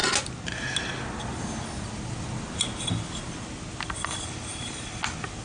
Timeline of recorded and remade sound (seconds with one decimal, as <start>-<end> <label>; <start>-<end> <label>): 0.0-5.4 recorded